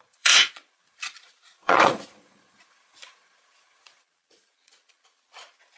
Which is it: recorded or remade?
remade